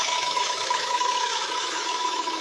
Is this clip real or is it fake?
fake